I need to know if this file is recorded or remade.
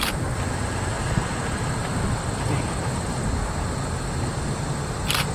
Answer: recorded